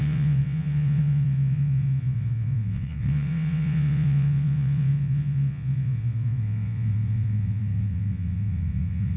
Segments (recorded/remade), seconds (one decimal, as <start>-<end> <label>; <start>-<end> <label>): 0.0-9.2 remade